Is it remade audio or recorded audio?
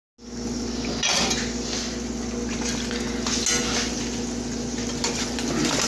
recorded